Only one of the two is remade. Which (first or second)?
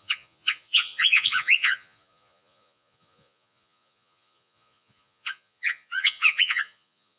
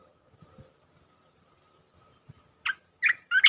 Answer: first